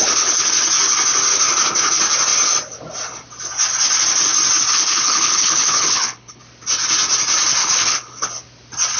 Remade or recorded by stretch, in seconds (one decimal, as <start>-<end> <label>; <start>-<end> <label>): 0.0-0.5 remade; 0.5-4.7 recorded; 4.7-6.4 remade; 6.4-7.6 recorded; 7.6-8.3 remade; 8.3-9.0 recorded